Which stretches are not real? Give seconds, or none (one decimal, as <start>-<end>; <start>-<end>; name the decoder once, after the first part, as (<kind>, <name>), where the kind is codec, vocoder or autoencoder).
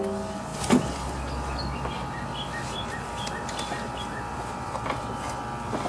none